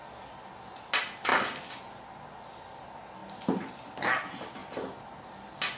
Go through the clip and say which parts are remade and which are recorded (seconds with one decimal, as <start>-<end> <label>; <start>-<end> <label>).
0.0-5.8 recorded